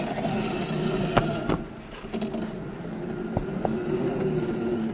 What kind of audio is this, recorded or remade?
recorded